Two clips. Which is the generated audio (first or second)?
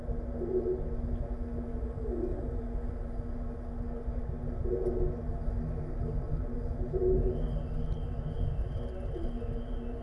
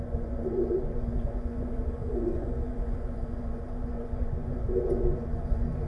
second